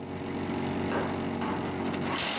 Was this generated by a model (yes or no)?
no